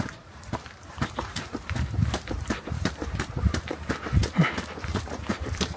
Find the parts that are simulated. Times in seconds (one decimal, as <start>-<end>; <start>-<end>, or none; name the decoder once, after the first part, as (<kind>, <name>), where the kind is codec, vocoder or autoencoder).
0.0-4.2 (vocoder, BigVGAN v2); 5.3-5.8

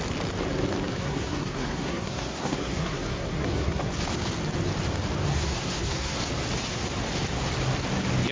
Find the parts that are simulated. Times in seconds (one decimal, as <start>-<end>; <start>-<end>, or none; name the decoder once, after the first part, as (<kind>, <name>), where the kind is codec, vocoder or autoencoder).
0.9-3.9 (codec, SNAC); 5.3-6.2

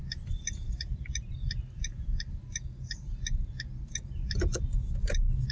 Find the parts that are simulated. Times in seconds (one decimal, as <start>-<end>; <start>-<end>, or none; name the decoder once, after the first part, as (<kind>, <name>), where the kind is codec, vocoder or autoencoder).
none

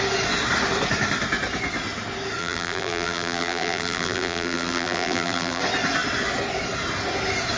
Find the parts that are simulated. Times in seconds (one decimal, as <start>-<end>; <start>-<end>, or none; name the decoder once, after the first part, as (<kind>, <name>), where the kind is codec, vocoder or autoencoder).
2.4-5.6 (vocoder, BigVGAN v2)

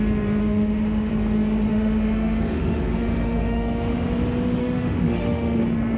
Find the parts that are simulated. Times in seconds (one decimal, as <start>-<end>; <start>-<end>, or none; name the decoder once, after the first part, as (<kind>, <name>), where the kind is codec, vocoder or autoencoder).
0.4-1.1 (autoencoder, DAC-VAE); 1.7-4.1; 4.6-5.6

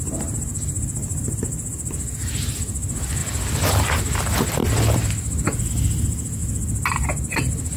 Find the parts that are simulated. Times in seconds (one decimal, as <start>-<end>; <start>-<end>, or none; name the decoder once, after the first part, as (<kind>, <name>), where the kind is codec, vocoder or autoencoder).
3.2-3.7 (vocoder, BigVGAN v2); 4.6-5.7; 6.4-7.8